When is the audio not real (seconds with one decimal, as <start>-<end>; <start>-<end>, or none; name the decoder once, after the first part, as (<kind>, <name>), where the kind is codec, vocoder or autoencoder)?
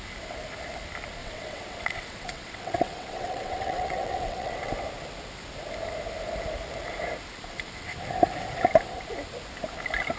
1.2-4.7 (vocoder, WaveNeXt)